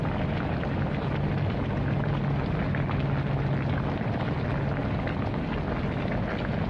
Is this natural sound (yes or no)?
yes